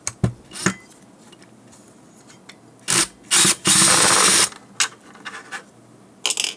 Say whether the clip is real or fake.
real